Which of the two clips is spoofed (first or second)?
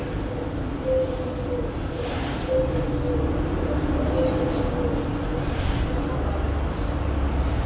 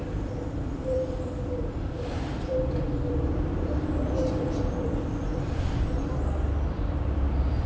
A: second